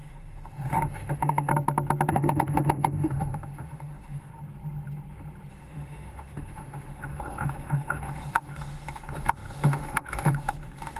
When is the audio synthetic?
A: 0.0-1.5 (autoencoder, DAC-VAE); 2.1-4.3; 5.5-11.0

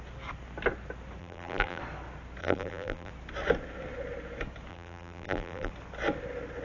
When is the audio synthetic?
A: 1.2-1.8 (vocoder, BigVGAN v2); 2.4-3.1; 4.7-5.7

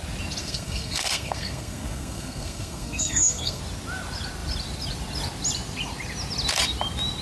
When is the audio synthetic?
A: 0.4-3.6 (codec, SNAC)

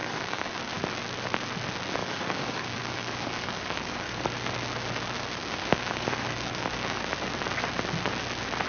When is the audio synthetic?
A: 0.0-0.6 (codec, DAC); 2.0-4.3; 5.4-7.0

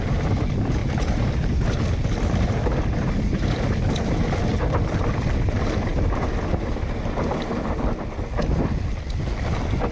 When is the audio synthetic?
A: 0.0-9.9 (vocoder, BigVGAN v2)